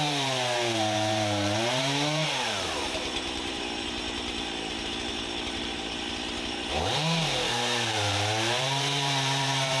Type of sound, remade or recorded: remade